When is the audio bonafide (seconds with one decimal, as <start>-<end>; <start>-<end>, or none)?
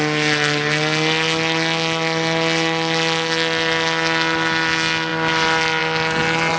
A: 0.0-6.6